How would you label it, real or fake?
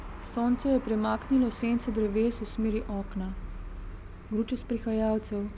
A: real